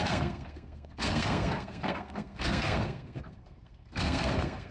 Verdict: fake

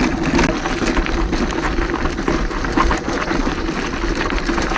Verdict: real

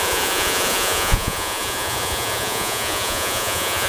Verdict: fake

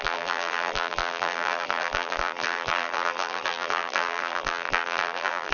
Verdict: fake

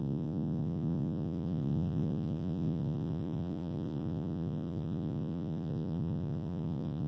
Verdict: fake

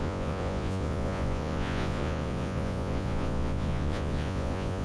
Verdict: fake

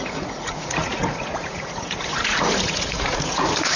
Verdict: fake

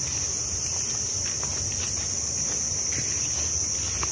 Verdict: real